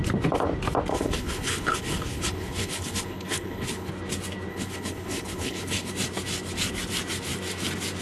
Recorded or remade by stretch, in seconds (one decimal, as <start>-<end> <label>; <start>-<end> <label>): 0.0-0.9 recorded; 0.9-3.9 remade; 3.9-4.5 recorded; 4.5-5.9 remade; 5.9-8.0 recorded